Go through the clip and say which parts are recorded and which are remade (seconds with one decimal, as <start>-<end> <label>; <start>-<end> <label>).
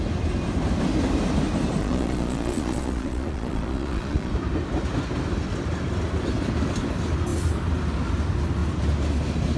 0.0-1.8 recorded; 1.8-4.3 remade; 4.3-9.6 recorded